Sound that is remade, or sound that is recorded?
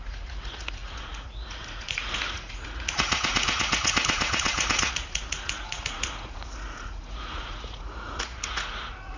remade